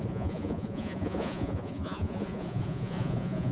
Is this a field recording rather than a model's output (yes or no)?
no